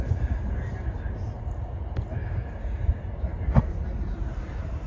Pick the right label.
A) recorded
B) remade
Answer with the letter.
A